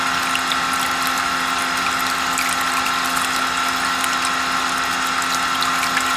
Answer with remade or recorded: recorded